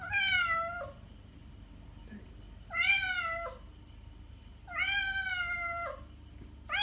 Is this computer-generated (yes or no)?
no